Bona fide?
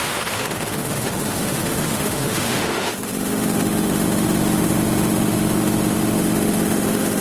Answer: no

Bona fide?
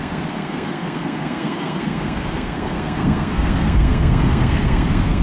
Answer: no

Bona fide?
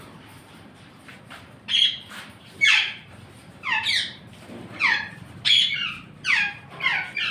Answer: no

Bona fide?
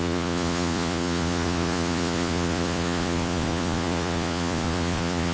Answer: no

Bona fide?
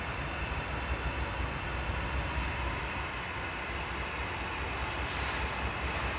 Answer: yes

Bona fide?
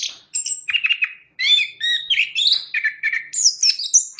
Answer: yes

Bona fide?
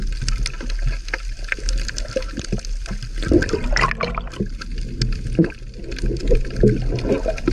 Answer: yes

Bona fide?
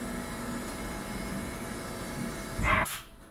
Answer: yes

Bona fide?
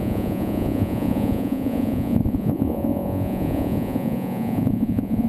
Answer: no